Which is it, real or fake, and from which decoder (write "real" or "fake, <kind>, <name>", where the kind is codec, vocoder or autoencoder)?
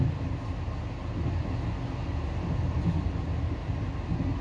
real